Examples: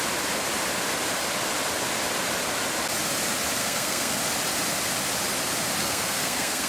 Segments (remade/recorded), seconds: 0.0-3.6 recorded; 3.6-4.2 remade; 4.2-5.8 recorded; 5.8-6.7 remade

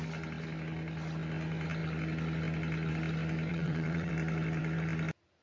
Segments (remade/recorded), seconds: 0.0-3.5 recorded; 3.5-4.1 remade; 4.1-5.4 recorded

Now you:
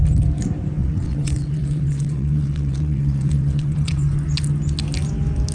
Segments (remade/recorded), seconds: 0.0-0.8 recorded; 0.8-4.1 remade; 4.1-5.5 recorded

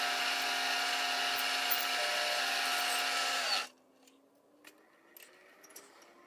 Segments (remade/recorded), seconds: 0.0-6.3 recorded

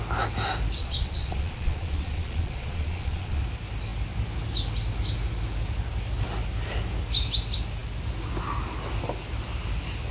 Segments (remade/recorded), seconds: 0.0-0.8 recorded; 0.8-3.4 remade; 3.4-10.1 recorded

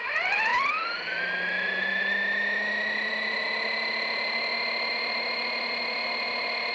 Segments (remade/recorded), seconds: 0.0-6.7 recorded

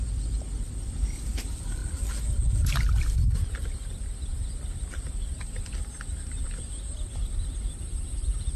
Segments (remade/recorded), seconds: 0.0-1.8 remade; 1.8-3.0 recorded; 3.0-8.6 remade

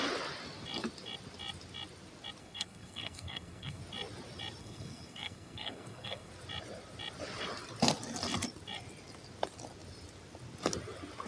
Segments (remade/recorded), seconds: 0.0-2.4 recorded; 2.4-3.8 remade; 3.8-4.6 recorded; 4.6-6.3 remade; 6.3-11.3 recorded